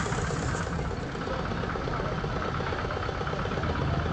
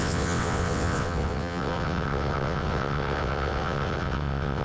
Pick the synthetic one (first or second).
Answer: second